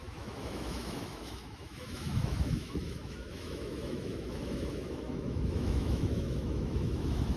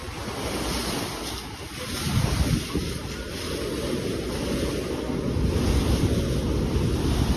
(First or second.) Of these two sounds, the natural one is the second